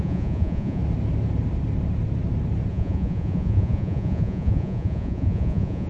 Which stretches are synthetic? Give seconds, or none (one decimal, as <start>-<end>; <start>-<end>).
0.0-0.8; 2.7-5.9